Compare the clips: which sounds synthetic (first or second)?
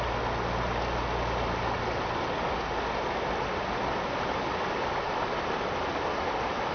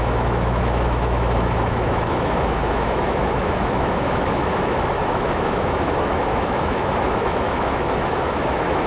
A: second